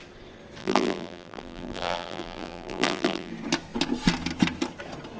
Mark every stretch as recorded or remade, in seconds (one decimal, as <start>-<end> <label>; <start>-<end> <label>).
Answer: 0.0-0.6 recorded; 0.6-3.3 remade; 3.3-5.2 recorded